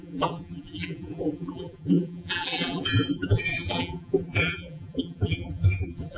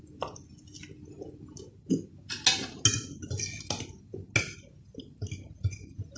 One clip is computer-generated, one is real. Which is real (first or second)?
second